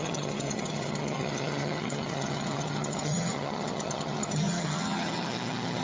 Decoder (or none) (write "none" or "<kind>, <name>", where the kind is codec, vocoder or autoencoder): vocoder, HiFi-GAN